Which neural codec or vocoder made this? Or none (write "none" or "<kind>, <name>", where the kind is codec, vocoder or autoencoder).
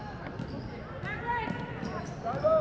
none